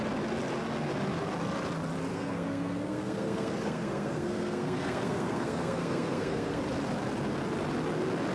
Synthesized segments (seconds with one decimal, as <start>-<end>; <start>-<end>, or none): 2.1-6.6